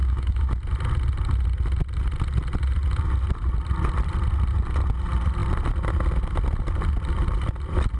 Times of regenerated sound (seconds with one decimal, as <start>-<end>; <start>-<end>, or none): 0.0-0.5